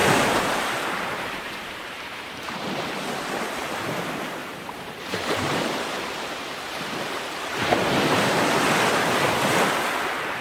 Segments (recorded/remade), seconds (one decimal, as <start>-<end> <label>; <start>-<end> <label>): 0.0-2.5 remade; 2.5-4.4 recorded; 4.4-8.5 remade; 8.5-10.4 recorded